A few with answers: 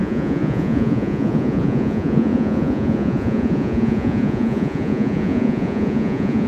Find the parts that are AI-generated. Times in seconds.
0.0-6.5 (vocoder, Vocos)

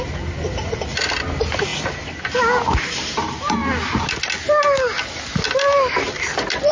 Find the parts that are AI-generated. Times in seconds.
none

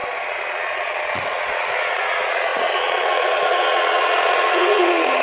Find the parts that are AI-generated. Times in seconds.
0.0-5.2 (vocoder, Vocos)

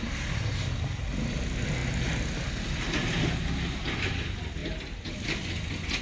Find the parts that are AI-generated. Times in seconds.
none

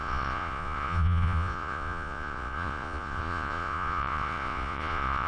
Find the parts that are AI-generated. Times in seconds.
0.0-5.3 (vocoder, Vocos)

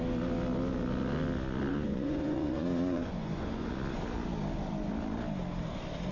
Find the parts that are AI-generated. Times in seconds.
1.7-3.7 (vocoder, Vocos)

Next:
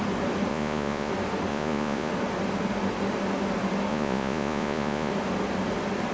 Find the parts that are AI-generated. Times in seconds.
0.5-1.1 (vocoder, Vocos); 1.5-2.1; 3.9-5.1

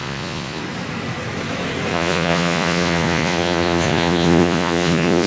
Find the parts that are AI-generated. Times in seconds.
0.0-0.6 (vocoder, Vocos); 1.9-5.3